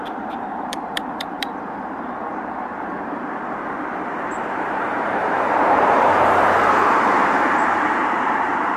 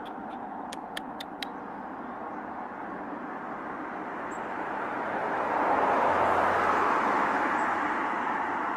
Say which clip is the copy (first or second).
first